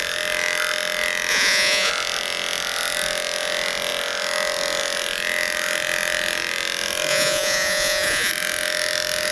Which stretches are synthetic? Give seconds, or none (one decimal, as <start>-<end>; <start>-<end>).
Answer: 1.3-1.9; 7.1-8.3